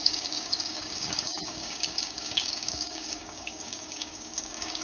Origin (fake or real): fake